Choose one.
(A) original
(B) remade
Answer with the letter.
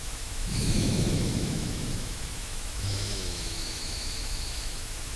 B